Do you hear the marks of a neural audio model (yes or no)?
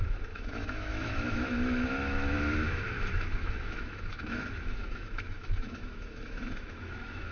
yes